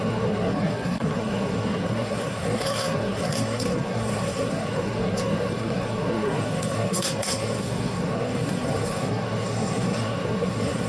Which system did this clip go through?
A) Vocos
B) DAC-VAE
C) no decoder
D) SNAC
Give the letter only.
D